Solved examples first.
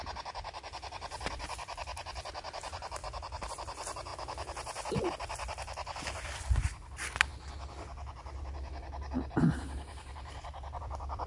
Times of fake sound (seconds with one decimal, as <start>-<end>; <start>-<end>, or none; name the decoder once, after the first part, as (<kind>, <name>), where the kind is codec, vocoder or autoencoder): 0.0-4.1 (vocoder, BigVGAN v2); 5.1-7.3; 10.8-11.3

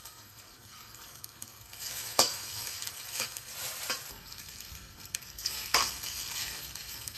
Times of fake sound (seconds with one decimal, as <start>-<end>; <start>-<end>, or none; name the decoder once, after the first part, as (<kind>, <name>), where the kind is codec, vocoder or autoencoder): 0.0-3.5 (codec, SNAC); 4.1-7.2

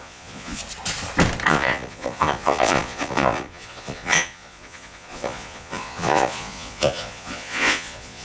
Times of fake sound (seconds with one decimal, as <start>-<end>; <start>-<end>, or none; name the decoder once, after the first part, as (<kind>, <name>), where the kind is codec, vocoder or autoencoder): 0.0-0.6 (vocoder, Vocos); 1.5-8.2

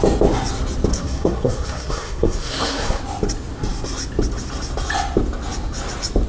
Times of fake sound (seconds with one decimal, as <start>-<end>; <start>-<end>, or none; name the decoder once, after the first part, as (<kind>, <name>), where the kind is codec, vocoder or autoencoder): 0.9-3.0 (codec, SNAC)

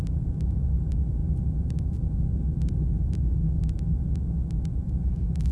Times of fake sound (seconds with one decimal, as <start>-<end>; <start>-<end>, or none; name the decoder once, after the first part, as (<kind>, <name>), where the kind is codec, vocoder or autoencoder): none